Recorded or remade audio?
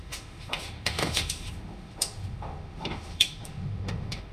remade